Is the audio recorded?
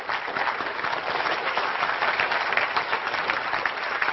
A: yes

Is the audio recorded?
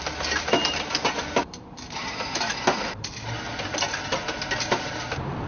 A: no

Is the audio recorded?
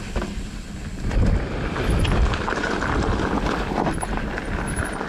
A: no